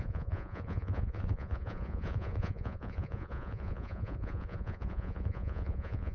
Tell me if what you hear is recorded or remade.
remade